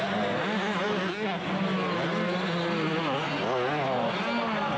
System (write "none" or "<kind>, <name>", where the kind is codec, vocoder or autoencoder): none